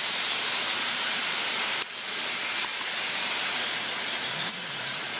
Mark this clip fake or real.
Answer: fake